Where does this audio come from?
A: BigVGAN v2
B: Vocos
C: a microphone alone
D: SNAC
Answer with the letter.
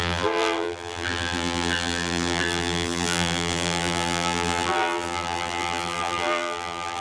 A